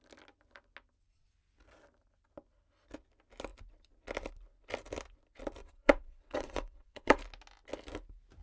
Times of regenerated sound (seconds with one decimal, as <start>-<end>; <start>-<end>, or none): 5.6-7.2